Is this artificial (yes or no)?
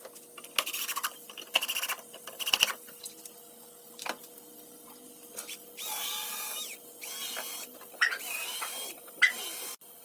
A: no